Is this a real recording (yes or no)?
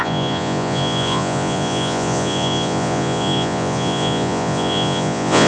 no